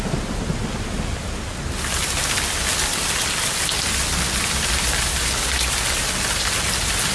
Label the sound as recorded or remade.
recorded